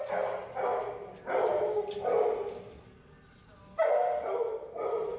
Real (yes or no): yes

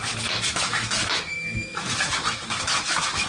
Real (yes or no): no